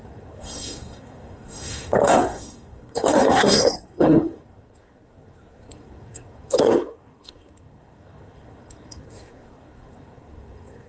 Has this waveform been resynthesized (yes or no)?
yes